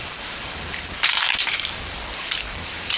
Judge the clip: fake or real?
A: fake